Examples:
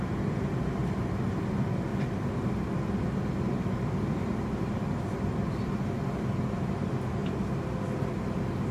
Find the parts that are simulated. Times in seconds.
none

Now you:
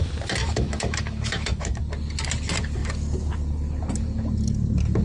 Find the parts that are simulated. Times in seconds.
0.4-1.8

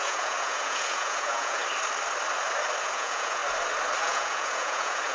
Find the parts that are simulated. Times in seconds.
0.0-1.6; 2.8-3.4; 4.0-5.1